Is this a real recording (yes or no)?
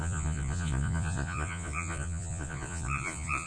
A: no